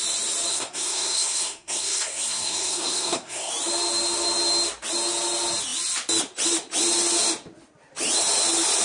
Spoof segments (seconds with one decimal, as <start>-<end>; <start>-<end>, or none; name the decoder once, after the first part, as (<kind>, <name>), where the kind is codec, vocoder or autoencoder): 0.5-3.5 (codec, SNAC)